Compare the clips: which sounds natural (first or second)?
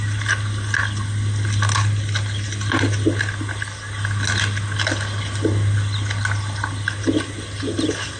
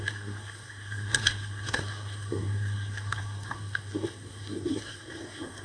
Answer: first